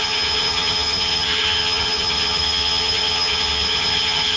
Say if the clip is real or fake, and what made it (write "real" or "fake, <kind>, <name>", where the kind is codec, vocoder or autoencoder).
fake, vocoder, HiFi-GAN